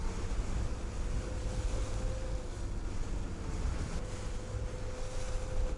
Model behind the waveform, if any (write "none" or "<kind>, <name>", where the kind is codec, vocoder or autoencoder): none